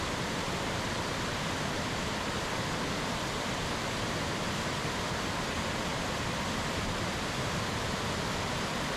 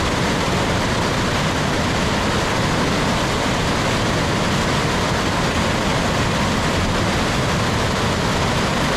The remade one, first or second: first